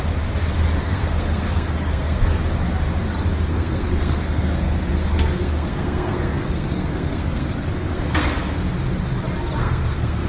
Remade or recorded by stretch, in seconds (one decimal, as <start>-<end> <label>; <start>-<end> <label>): 0.0-0.8 recorded; 0.8-2.4 remade; 2.4-3.5 recorded; 3.5-8.3 remade; 8.3-9.6 recorded; 9.6-10.3 remade